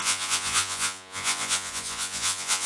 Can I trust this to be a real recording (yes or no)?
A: no